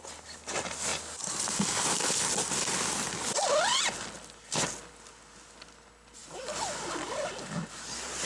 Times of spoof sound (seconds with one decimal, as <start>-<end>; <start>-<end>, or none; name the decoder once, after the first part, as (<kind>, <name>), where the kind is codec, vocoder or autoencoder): none